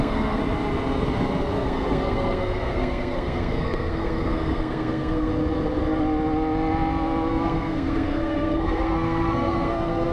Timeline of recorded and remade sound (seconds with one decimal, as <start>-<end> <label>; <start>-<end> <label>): 0.0-0.4 remade; 0.4-1.5 recorded; 1.5-5.3 remade; 5.3-7.3 recorded; 7.3-10.1 remade